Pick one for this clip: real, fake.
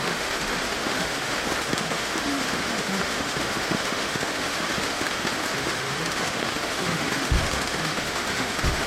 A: fake